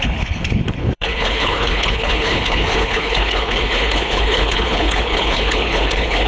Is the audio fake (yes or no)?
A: yes